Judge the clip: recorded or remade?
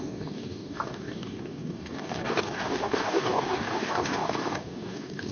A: remade